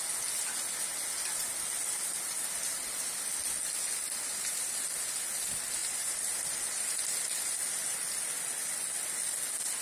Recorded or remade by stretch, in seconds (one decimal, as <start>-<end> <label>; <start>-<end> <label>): 0.0-9.8 recorded